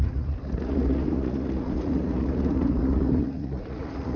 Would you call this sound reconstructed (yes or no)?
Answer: yes